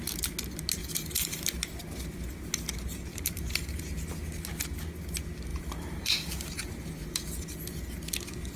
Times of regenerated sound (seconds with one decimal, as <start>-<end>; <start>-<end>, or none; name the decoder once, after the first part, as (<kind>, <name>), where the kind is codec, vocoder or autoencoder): 0.8-1.4 (vocoder, BigVGAN v2); 3.1-3.8; 5.5-6.6